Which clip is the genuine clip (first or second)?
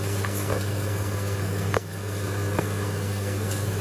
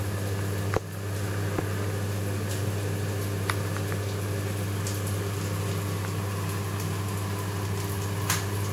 second